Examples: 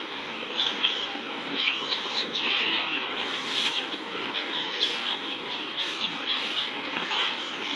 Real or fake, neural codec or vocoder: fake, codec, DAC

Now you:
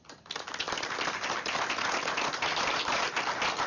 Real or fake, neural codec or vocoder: real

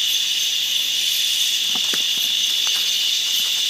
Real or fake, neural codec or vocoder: fake, vocoder, BigVGAN v2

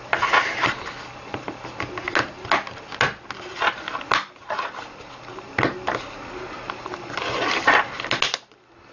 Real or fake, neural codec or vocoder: real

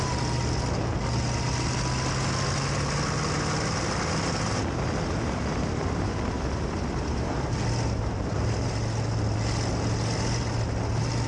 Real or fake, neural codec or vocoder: real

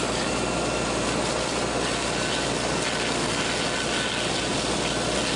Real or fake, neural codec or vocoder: real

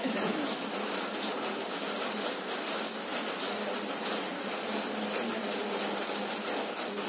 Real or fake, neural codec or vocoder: real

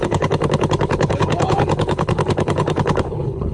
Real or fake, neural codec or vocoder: fake, codec, HILCodec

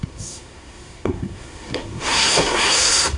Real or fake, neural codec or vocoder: fake, codec, SNAC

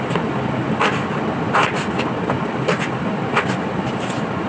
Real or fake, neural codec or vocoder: real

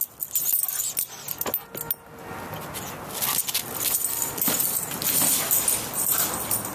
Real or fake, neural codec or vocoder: real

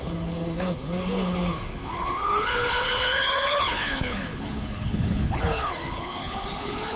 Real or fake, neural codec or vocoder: fake, codec, HILCodec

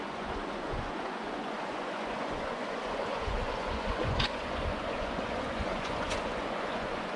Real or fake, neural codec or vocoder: fake, vocoder, Vocos